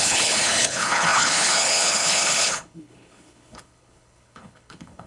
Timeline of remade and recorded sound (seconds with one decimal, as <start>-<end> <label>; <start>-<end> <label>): 0.0-5.1 remade